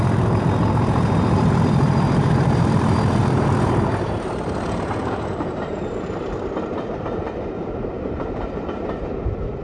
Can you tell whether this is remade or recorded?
remade